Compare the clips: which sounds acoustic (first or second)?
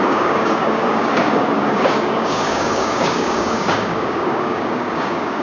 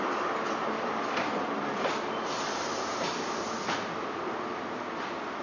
second